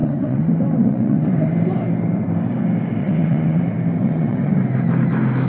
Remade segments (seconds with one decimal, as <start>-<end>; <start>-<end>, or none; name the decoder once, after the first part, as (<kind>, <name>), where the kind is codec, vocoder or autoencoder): 0.0-1.5 (vocoder, WaveNeXt); 3.0-3.6; 4.0-4.6